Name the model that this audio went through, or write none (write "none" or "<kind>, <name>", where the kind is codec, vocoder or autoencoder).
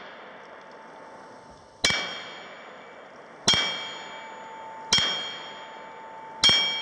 none